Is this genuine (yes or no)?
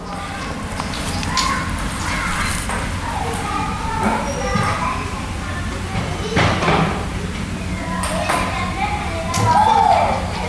yes